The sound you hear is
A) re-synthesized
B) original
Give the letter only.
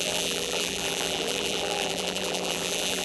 A